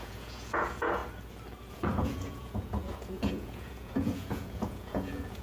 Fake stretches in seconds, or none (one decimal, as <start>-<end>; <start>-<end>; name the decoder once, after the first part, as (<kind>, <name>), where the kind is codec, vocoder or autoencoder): 0.0-1.0 (vocoder, Vocos); 1.7-5.4

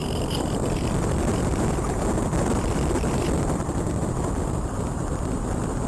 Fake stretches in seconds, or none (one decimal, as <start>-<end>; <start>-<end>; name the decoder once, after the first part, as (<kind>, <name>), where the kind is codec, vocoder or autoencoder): none

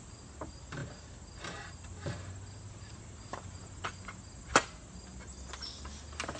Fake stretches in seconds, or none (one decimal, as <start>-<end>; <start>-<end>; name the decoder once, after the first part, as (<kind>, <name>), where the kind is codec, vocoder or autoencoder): none

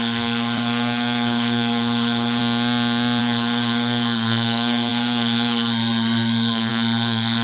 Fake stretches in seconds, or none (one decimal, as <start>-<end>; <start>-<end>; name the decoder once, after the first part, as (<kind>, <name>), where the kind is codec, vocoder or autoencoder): 0.0-2.4 (codec, SNAC); 3.2-7.4

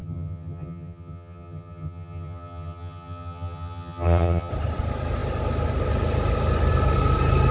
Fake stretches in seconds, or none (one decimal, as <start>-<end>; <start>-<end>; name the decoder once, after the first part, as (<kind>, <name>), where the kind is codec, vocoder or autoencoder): 0.0-4.5 (vocoder, HiFi-GAN)

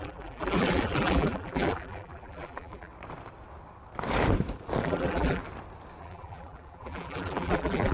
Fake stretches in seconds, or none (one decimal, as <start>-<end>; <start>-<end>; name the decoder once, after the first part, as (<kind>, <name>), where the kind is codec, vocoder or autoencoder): 0.0-2.9 (vocoder, BigVGAN v2); 4.8-5.4; 6.0-7.9

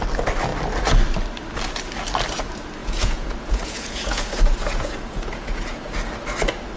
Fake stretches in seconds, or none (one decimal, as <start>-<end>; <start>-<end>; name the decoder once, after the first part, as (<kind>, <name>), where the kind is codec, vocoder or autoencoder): 2.8-5.8 (vocoder, Vocos)